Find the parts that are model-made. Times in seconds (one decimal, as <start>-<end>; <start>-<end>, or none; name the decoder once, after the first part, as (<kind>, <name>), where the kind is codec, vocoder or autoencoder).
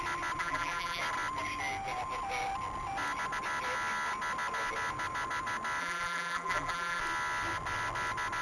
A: 0.4-1.0 (vocoder, BigVGAN v2); 5.8-7.0